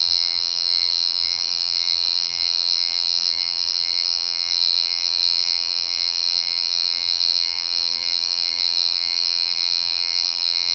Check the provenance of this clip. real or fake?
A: fake